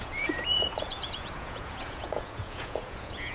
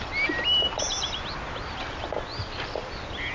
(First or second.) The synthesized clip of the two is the first